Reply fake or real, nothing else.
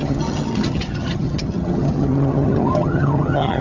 fake